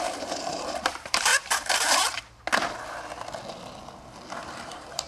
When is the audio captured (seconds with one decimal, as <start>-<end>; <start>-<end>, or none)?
1.3-4.3